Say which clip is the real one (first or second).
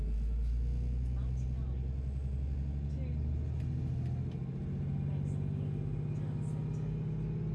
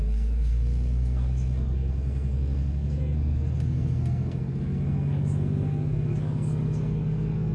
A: first